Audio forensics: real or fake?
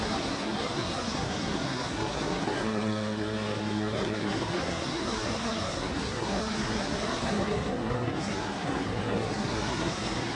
fake